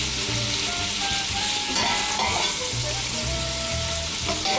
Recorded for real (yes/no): yes